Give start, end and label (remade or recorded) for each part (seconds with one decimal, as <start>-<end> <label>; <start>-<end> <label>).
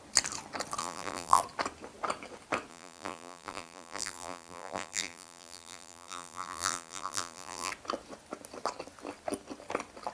0.0-0.8 recorded; 0.8-1.4 remade; 1.4-2.7 recorded; 2.7-7.7 remade; 7.7-10.1 recorded